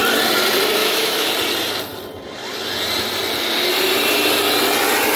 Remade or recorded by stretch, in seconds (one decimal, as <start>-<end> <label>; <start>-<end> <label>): 0.0-0.8 recorded; 0.8-1.3 remade; 1.3-5.2 recorded